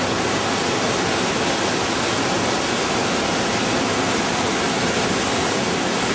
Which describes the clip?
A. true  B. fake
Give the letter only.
A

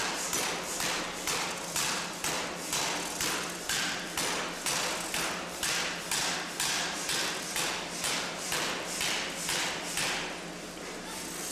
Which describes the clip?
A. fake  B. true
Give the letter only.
B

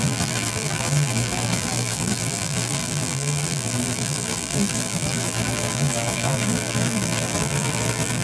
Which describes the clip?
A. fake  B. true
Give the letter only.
A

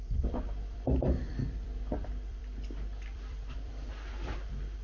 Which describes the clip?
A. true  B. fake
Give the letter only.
B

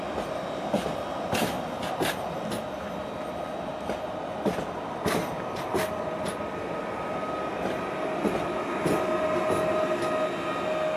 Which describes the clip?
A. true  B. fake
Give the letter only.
A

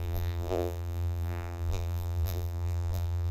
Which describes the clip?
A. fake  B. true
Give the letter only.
A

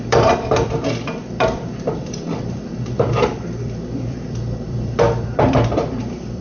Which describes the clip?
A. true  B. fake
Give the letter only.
B